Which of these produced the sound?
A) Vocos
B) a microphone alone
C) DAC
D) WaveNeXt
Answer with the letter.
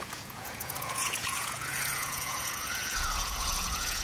A